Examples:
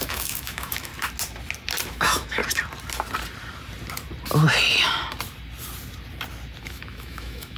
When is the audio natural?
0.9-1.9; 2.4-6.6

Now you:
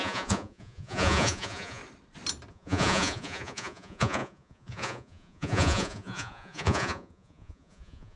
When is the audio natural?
1.8-2.5

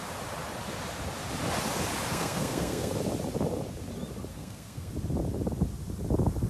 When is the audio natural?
0.0-2.1; 2.9-4.3; 4.9-6.5

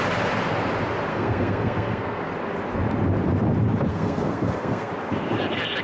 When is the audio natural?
0.0-1.1; 2.2-3.9; 4.9-5.8

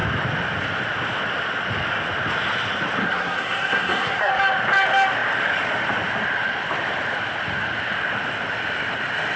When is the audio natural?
0.0-3.0; 4.3-9.4

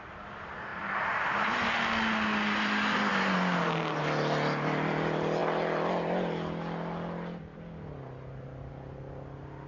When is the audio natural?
0.0-9.7